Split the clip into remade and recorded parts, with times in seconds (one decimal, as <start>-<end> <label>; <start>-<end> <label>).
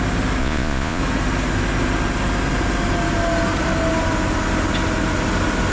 0.0-0.4 recorded; 0.4-1.0 remade; 1.0-5.7 recorded